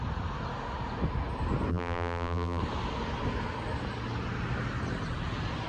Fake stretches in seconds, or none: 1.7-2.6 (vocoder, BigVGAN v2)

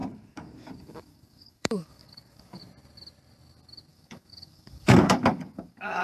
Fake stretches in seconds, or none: 0.0-2.6 (codec, DAC); 3.9-6.0

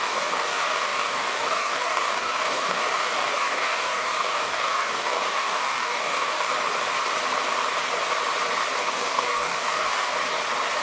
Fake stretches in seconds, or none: 0.0-6.5 (codec, DAC); 8.8-10.1

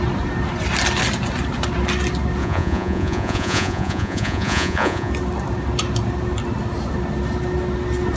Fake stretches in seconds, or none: 2.4-5.1 (vocoder, Vocos)

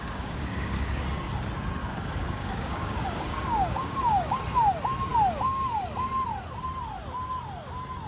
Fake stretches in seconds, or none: 0.0-1.0 (codec, DAC); 1.8-4.4

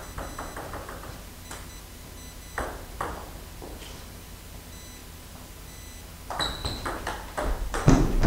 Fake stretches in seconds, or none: none